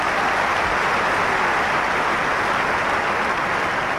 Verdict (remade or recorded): recorded